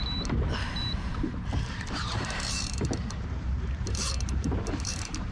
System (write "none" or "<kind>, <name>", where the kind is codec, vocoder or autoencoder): vocoder, BigVGAN v2